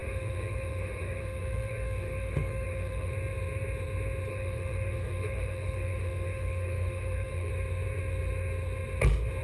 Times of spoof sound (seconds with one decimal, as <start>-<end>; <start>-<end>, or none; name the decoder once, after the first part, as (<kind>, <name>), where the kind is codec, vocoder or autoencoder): 0.0-3.1 (autoencoder, DAC-VAE); 4.3-7.5